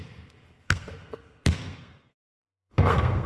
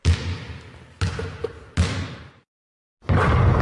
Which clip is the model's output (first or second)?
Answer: first